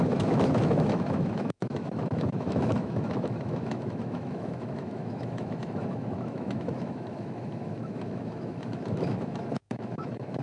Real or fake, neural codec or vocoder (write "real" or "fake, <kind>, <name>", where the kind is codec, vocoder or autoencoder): fake, autoencoder, DAC-VAE